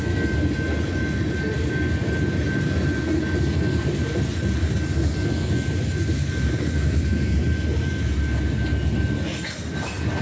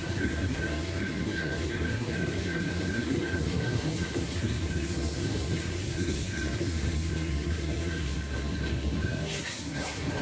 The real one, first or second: first